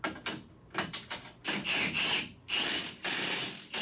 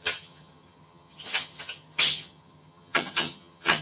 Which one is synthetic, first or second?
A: second